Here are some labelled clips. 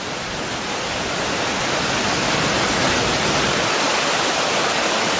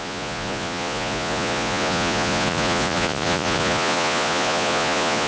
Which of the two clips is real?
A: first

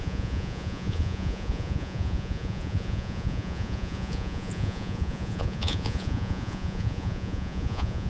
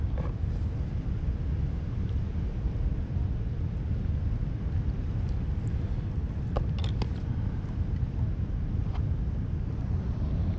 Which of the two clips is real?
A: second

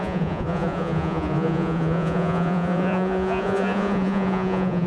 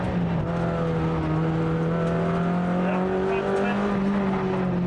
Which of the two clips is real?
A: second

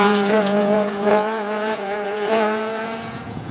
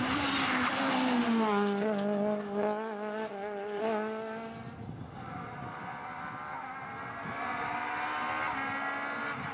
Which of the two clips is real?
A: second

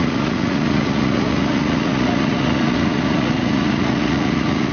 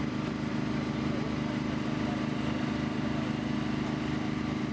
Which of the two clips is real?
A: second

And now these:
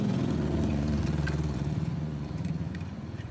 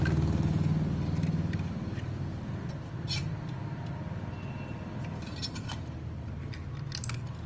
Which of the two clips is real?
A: second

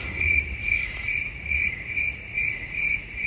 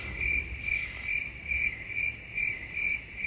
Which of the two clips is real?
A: second